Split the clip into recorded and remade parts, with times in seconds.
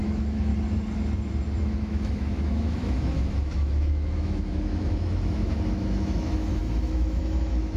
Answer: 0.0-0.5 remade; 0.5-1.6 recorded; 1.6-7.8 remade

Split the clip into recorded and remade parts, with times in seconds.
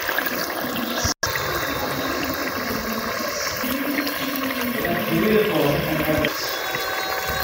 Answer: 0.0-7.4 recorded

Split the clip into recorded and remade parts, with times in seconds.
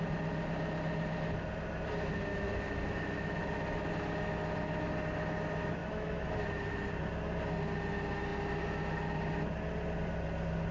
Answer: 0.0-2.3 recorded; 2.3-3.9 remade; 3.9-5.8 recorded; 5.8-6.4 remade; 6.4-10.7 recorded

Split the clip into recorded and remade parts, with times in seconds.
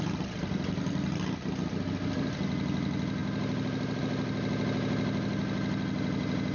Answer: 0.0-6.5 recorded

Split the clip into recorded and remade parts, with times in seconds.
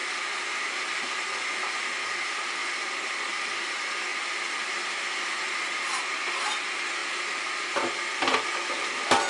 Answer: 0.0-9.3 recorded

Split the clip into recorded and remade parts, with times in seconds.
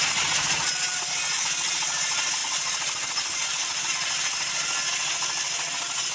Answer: 0.0-6.1 recorded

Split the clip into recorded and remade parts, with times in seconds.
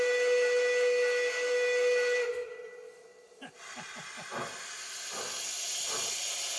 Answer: 0.0-2.3 remade; 2.3-6.6 recorded